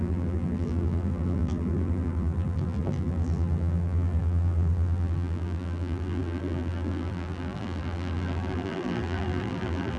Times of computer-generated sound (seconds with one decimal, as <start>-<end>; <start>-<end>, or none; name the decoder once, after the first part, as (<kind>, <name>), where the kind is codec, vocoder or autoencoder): 0.0-10.0 (vocoder, BigVGAN v2)